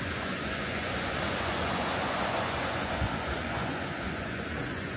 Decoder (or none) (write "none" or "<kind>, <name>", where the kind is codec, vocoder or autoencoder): vocoder, Vocos